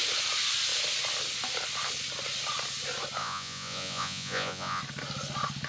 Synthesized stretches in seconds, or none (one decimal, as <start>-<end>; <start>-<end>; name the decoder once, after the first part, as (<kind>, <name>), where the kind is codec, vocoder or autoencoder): 3.2-4.8 (vocoder, Vocos)